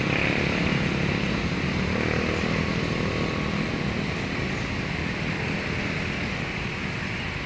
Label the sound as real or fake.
real